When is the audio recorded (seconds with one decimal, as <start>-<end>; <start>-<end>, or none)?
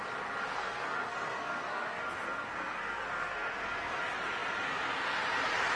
0.0-0.5; 4.0-5.8